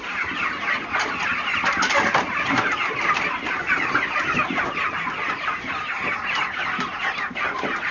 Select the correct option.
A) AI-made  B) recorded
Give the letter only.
B